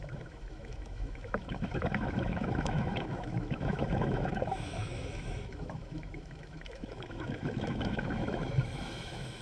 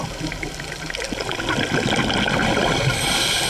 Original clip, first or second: second